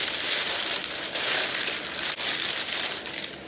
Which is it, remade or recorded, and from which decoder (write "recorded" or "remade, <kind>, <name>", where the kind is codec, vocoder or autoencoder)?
recorded